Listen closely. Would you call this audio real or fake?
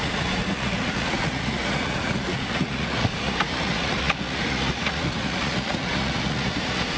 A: fake